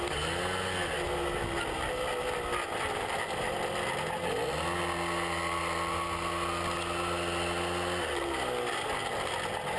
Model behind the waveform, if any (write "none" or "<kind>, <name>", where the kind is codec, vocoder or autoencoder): none